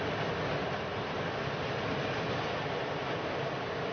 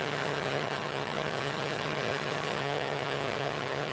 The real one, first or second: first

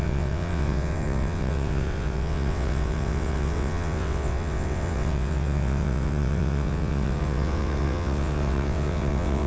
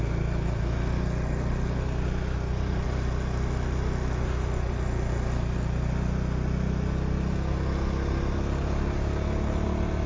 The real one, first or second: second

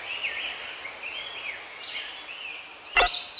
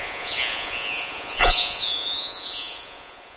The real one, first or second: first